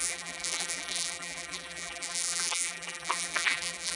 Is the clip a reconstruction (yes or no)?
yes